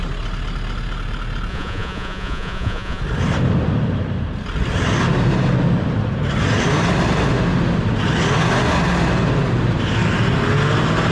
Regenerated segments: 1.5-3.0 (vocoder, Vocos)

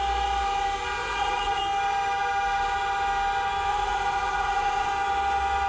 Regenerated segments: 1.0-1.6 (vocoder, Vocos); 3.7-4.9

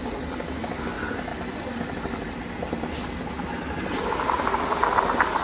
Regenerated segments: none

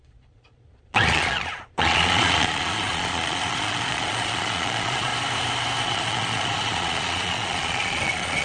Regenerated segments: 0.0-5.1 (vocoder, Vocos); 5.8-8.4

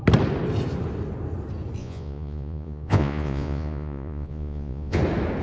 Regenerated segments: 1.8-5.0 (vocoder, Vocos)

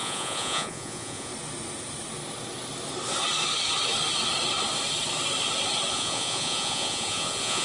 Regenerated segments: 0.0-1.3 (vocoder, Vocos); 5.9-7.6

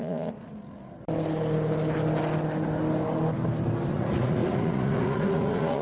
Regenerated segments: 0.0-0.4 (vocoder, Vocos); 3.9-5.8

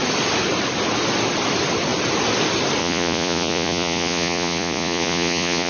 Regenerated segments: 2.8-5.7 (vocoder, Vocos)